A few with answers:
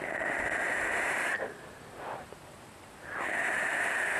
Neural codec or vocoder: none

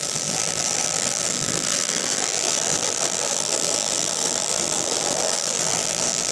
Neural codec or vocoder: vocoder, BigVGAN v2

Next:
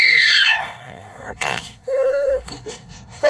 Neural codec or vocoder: codec, SNAC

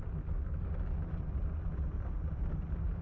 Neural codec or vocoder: none